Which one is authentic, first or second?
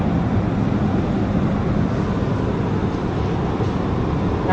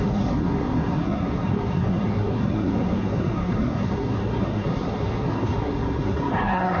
first